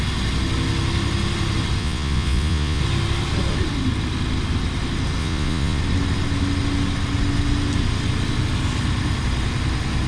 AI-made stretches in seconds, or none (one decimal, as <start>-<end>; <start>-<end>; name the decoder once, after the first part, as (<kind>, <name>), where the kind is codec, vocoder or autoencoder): 1.8-2.8 (vocoder, Vocos); 5.2-5.8